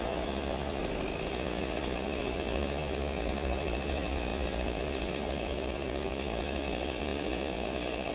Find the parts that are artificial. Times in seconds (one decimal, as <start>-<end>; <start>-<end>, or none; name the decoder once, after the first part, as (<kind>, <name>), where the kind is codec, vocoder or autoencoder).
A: 0.0-0.8 (vocoder, Vocos); 1.3-8.1